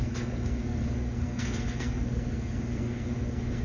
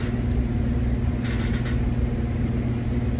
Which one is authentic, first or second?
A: second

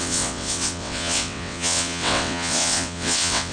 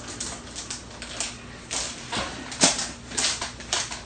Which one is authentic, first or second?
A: second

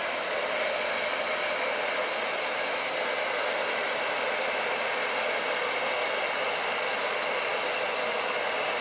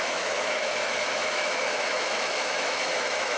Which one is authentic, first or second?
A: first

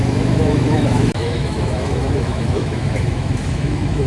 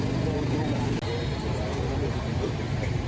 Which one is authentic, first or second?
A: second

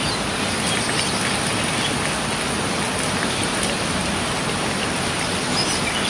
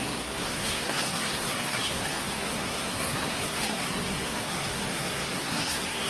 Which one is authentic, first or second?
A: first